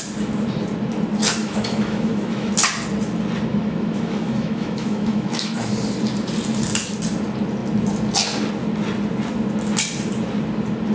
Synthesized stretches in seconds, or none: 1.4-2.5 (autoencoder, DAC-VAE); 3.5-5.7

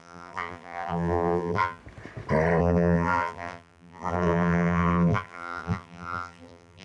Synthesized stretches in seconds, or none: 0.0-1.8 (vocoder, BigVGAN v2); 2.6-6.8